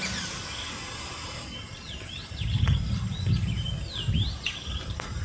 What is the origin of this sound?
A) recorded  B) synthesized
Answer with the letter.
A